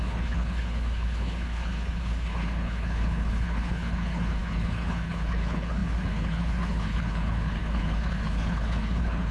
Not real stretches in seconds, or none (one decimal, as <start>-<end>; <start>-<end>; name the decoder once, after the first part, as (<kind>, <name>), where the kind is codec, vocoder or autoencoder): 0.0-9.3 (codec, HILCodec)